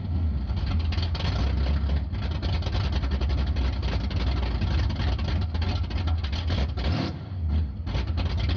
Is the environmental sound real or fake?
real